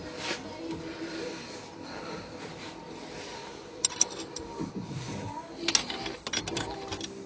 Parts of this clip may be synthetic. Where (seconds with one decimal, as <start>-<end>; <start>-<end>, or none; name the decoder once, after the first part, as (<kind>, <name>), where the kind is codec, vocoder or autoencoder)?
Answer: none